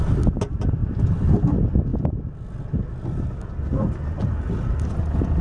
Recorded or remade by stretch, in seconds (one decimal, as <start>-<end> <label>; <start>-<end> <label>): 0.0-5.4 recorded